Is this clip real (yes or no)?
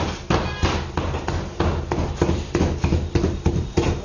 yes